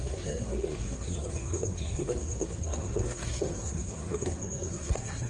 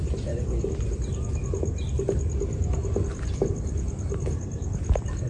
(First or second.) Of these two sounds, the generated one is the first